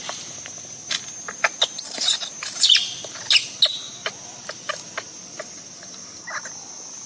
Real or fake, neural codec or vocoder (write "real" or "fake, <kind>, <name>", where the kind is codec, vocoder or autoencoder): real